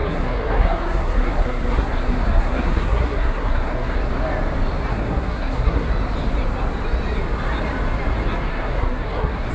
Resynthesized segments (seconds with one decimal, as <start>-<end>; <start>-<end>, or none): 0.0-4.1; 4.9-5.9; 8.5-9.5